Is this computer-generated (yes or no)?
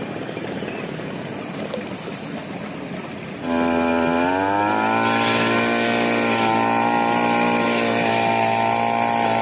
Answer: no